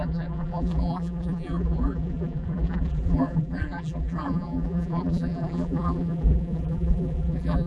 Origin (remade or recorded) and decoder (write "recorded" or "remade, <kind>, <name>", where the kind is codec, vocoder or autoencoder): remade, vocoder, BigVGAN v2